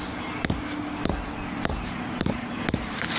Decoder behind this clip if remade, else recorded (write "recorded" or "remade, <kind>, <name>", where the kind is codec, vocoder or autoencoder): recorded